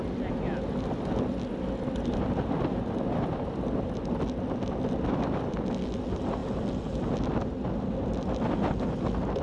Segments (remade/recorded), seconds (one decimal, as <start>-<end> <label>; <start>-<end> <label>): 0.0-9.4 recorded